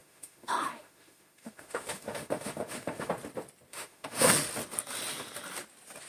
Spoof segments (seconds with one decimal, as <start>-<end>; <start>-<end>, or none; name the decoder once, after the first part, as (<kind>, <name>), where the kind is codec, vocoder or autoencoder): 0.0-3.1 (autoencoder, DAC-VAE); 3.7-4.3